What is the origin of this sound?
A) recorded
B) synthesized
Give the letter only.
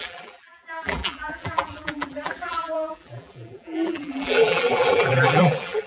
B